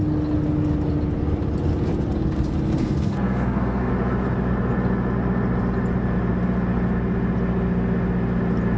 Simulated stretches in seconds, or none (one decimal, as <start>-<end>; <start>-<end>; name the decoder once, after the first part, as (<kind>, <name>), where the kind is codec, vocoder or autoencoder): 2.8-3.9 (codec, SNAC)